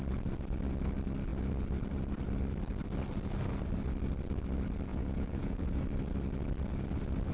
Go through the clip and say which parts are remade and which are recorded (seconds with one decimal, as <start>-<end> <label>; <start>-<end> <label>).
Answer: 0.0-4.9 recorded; 4.9-5.8 remade; 5.8-7.3 recorded